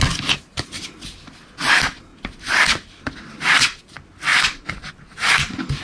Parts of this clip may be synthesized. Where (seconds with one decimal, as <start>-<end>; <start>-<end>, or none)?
none